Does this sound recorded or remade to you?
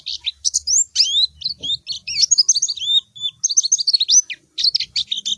recorded